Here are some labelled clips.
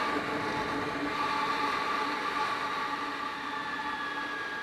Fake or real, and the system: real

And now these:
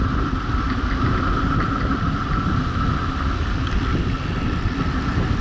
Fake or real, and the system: fake, vocoder, BigVGAN v2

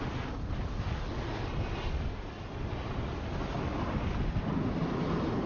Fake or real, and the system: real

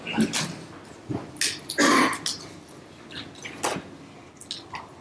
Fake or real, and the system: real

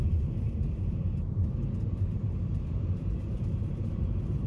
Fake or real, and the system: fake, vocoder, BigVGAN v2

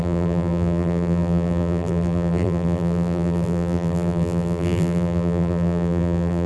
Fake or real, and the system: fake, vocoder, BigVGAN v2